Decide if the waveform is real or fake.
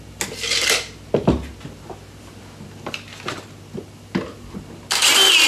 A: real